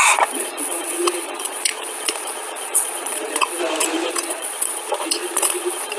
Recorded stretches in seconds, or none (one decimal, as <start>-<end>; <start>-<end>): 3.6-4.1